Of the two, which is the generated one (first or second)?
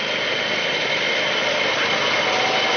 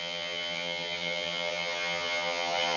second